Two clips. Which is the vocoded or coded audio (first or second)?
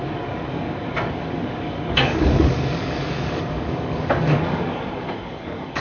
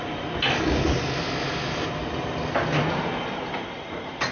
first